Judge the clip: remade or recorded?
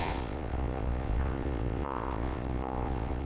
remade